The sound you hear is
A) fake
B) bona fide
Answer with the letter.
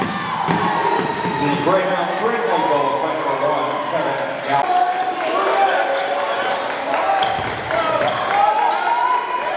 B